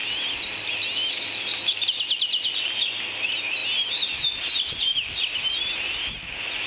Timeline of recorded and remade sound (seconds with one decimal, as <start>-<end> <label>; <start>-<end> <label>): 0.0-6.7 recorded